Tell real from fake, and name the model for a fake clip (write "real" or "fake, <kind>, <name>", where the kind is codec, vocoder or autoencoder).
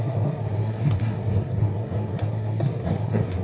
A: fake, codec, SNAC